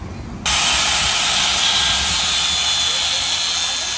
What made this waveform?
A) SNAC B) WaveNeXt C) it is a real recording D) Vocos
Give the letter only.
C